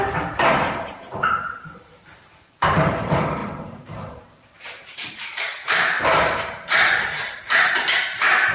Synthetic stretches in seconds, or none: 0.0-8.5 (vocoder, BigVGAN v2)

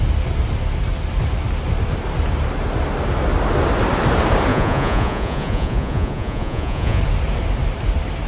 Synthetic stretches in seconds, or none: 4.5-7.0 (vocoder, Vocos)